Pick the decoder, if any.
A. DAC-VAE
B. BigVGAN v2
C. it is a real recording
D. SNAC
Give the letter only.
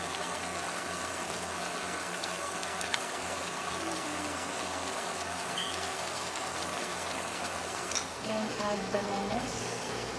D